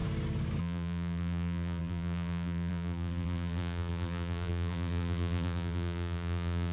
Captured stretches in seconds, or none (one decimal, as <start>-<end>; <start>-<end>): 0.0-0.6